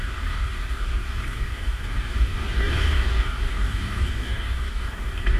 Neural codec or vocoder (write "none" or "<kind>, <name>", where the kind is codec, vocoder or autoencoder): codec, DAC